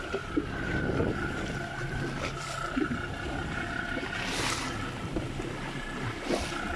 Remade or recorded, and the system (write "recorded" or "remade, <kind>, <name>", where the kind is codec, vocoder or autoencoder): recorded